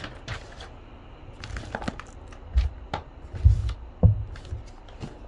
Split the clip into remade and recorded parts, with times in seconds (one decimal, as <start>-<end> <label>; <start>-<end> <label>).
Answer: 0.0-3.6 remade; 3.6-4.8 recorded; 4.8-5.3 remade